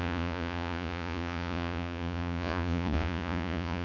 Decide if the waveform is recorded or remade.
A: remade